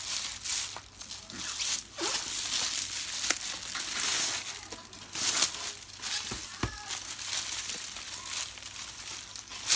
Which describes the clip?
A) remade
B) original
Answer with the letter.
B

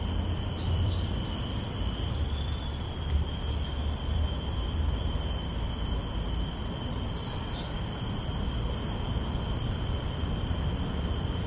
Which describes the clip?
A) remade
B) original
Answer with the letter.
A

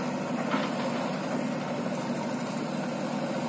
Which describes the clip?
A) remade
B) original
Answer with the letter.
B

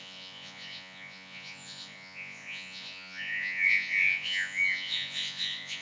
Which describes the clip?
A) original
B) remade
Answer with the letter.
B